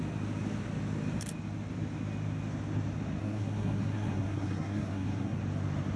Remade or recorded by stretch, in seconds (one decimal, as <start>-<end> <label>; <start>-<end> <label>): 0.0-3.2 recorded; 3.2-5.4 remade; 5.4-6.0 recorded

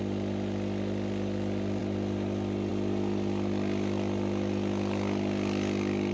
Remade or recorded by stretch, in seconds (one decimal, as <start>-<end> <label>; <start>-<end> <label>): 0.0-6.1 recorded